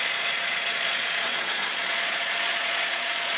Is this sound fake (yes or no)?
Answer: yes